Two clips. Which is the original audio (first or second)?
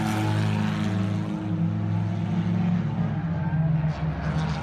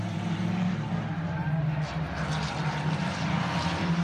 first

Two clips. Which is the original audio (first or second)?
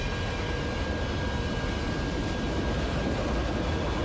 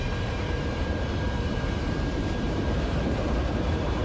first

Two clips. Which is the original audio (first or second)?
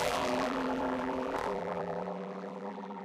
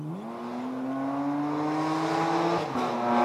second